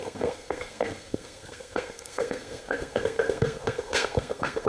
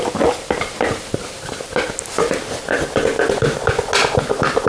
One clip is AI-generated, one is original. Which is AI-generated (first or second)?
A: first